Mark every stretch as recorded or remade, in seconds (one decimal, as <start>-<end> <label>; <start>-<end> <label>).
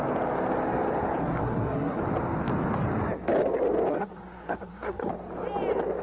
0.0-1.2 recorded; 1.2-2.0 remade; 2.0-3.9 recorded; 3.9-5.1 remade; 5.1-6.0 recorded